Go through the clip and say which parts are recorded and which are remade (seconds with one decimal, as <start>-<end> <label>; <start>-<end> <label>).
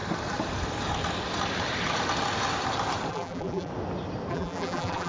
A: 0.0-3.1 recorded; 3.1-3.7 remade; 3.7-4.3 recorded; 4.3-5.1 remade